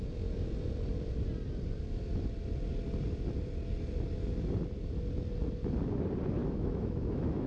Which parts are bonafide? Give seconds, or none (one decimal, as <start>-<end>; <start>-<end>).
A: 0.0-6.4